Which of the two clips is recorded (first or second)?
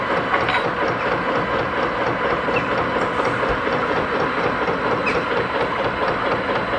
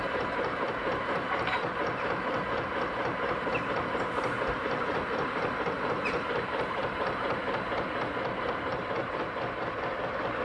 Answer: first